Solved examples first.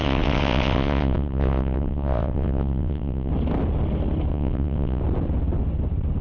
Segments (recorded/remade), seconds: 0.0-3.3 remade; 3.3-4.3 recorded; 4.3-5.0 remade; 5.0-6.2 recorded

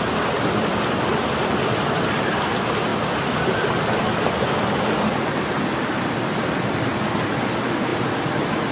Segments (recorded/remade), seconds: 0.0-8.7 recorded

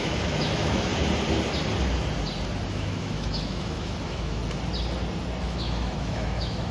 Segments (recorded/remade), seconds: 0.0-0.9 remade; 0.9-2.7 recorded; 2.7-4.4 remade; 4.4-5.4 recorded; 5.4-6.7 remade

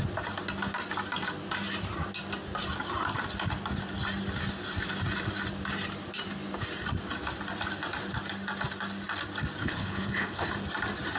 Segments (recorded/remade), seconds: 0.0-9.6 recorded; 9.6-10.5 remade; 10.5-11.2 recorded

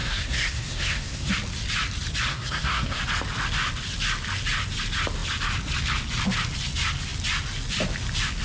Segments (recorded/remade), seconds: 0.0-1.3 remade; 1.3-2.3 recorded; 2.3-3.0 remade; 3.0-8.4 recorded